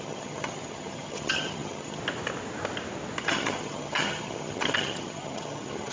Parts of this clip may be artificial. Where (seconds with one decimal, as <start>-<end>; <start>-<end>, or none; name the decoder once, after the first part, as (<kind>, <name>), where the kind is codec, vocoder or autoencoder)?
0.0-2.0 (vocoder, HiFi-GAN); 3.2-5.9